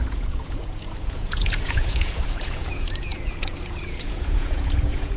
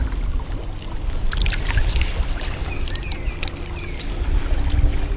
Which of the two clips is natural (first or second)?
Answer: second